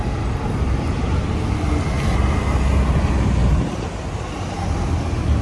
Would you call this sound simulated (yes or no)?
no